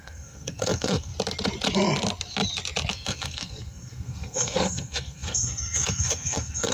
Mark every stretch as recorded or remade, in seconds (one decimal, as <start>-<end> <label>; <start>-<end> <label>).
0.0-1.1 remade; 1.1-2.9 recorded; 2.9-6.7 remade